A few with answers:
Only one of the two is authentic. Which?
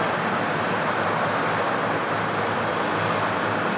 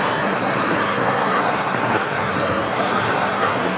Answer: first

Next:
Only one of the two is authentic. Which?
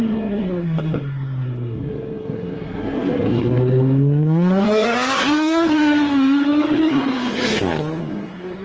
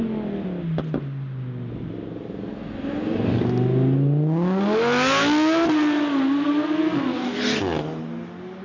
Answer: second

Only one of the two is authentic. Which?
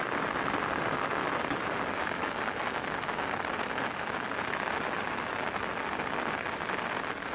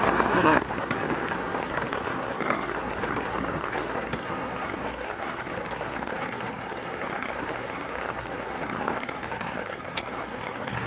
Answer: first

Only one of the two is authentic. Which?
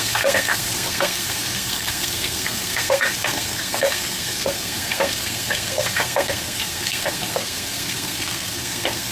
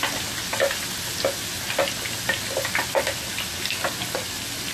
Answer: second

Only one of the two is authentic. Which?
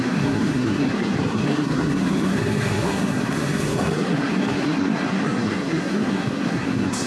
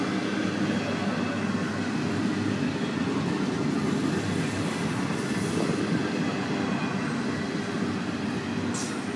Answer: second